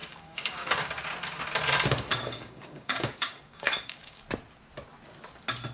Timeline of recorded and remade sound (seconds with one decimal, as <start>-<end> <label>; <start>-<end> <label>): 0.0-0.8 remade; 0.8-2.1 recorded; 2.1-4.2 remade; 4.2-5.7 recorded